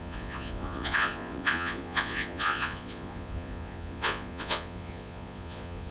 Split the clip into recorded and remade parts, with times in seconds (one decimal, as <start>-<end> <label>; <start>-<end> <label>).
0.0-5.9 remade